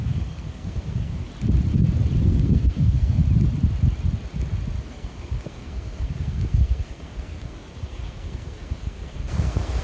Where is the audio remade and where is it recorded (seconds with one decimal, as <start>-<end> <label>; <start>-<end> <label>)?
0.0-1.3 remade; 1.3-2.2 recorded; 2.2-3.2 remade; 3.2-4.8 recorded; 4.8-9.8 remade